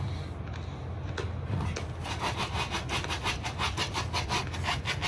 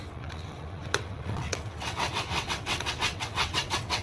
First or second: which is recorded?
first